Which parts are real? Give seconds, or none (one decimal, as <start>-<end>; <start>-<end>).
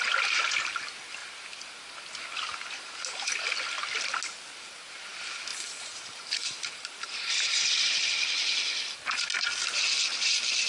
0.0-5.5; 7.6-10.7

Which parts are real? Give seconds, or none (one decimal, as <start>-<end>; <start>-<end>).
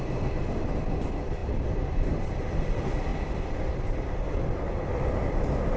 0.0-5.8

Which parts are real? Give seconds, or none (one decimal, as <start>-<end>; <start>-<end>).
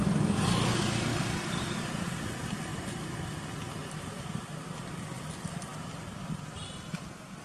0.0-7.4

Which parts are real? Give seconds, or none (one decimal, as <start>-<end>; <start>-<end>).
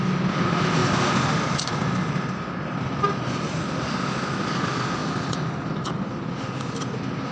0.0-0.8; 3.8-7.3